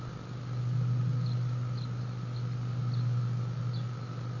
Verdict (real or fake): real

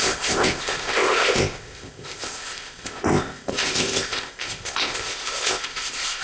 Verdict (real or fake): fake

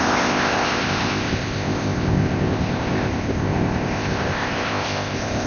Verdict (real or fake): fake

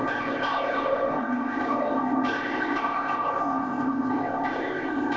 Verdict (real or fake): fake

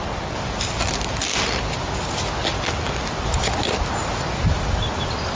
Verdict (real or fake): real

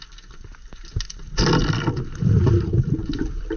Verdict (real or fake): real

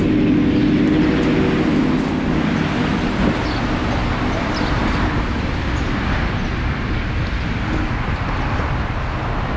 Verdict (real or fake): real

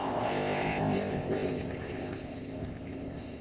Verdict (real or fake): fake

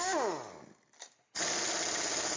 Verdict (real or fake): real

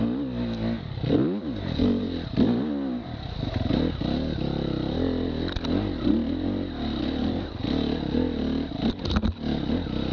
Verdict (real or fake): real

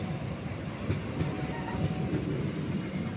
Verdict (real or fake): real